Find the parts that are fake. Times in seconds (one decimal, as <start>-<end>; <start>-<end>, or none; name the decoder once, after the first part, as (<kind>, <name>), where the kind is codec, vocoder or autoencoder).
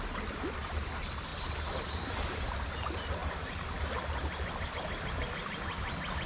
none